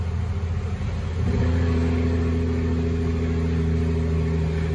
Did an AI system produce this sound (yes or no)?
no